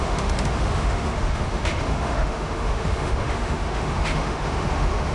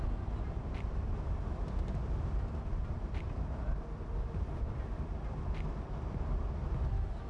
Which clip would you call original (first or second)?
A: second